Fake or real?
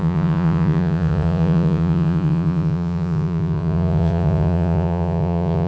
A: fake